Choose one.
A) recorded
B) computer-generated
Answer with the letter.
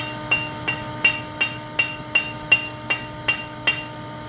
A